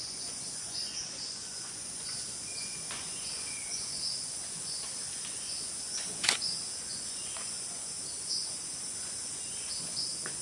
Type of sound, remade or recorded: remade